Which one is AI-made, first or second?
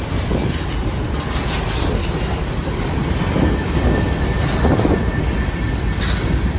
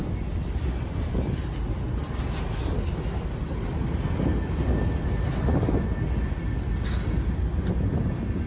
first